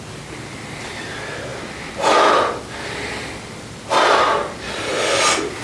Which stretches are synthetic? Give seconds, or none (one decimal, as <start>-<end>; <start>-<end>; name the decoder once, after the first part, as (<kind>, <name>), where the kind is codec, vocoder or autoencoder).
1.5-4.9 (vocoder, BigVGAN v2)